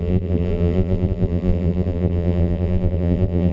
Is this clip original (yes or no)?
no